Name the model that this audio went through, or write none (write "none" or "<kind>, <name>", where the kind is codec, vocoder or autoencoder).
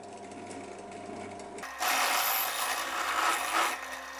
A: none